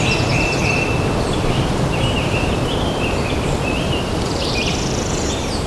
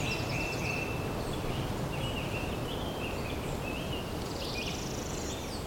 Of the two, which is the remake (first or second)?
first